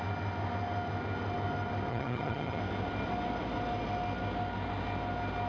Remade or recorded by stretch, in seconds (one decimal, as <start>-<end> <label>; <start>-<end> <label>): 0.0-1.9 recorded; 1.9-2.6 remade; 2.6-5.5 recorded